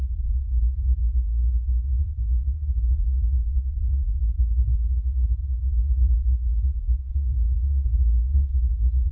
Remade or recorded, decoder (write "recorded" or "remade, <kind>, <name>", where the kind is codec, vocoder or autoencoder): remade, codec, SNAC